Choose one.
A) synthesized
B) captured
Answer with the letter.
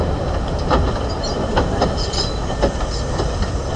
B